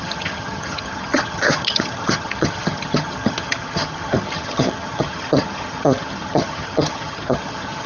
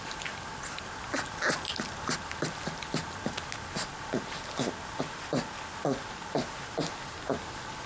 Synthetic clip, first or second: first